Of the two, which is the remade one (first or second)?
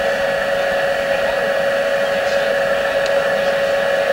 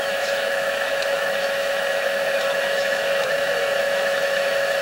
second